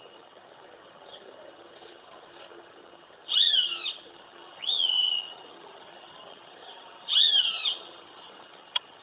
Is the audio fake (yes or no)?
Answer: yes